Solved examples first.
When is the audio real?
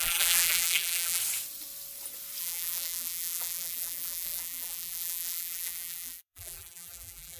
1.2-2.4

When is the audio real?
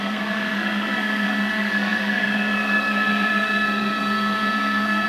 none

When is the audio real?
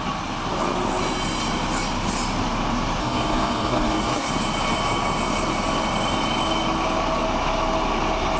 0.0-3.0; 4.3-8.4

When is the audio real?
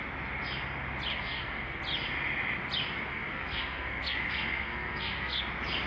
0.0-1.1; 1.8-3.1; 5.4-5.9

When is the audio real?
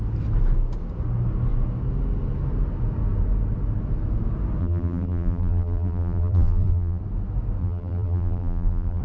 0.0-4.6; 7.0-7.6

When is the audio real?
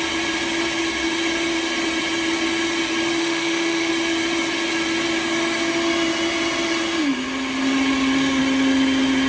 0.0-3.2; 3.9-9.3